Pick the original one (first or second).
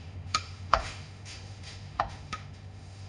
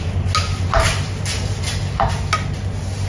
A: second